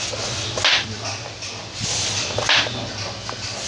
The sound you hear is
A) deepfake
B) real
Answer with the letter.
B